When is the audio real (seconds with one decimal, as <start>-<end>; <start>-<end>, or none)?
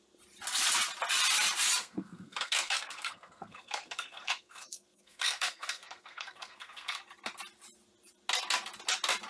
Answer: 0.0-1.8; 7.0-9.3